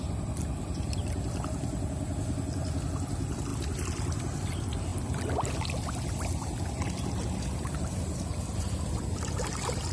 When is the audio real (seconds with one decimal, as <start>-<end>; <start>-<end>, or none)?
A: 0.0-9.9